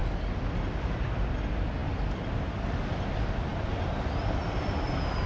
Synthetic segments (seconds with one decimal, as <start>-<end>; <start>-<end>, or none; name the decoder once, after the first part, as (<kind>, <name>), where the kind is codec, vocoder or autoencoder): none